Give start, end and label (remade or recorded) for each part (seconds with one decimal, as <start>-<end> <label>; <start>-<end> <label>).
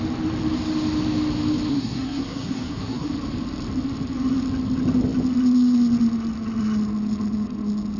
0.0-1.7 recorded; 1.7-3.1 remade; 3.1-8.0 recorded